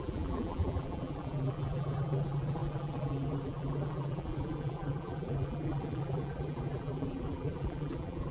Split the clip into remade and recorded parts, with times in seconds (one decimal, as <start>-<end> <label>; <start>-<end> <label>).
0.0-8.3 remade